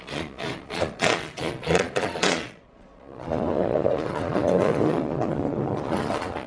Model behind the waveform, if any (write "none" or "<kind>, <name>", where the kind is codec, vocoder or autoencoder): vocoder, Vocos